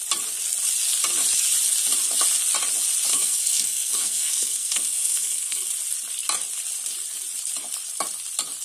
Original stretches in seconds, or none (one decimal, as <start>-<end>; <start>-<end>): 0.0-3.1; 5.7-8.6

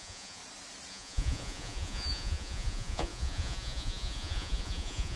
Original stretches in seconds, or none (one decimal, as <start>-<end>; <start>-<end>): 0.4-0.9

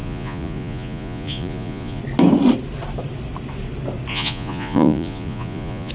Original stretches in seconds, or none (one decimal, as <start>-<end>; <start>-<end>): 2.0-4.1

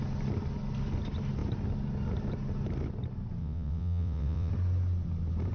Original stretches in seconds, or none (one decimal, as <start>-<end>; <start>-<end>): 0.0-3.4; 4.5-5.5

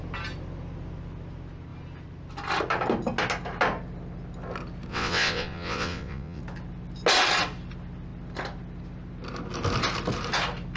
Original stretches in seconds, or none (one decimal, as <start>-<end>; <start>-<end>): 0.0-4.9; 6.4-10.8

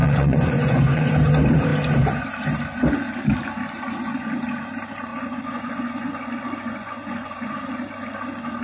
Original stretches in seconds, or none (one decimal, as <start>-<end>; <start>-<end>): 1.1-5.1; 7.5-8.6

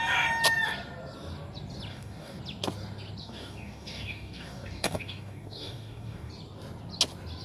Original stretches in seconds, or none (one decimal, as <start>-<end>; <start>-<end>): 0.0-1.9; 2.4-3.2; 6.3-7.4

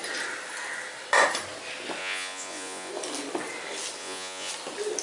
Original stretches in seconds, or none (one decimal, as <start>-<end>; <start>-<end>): 0.0-2.0; 2.9-4.0; 4.5-5.0